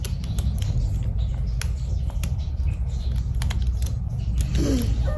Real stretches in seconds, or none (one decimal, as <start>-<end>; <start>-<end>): 0.0-5.2